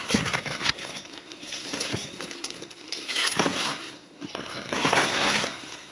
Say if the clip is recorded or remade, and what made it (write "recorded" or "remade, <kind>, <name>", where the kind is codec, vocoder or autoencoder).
remade, codec, SNAC